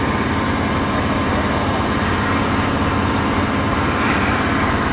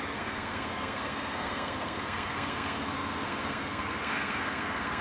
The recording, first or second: first